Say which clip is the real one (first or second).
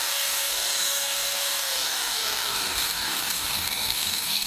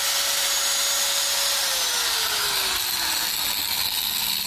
second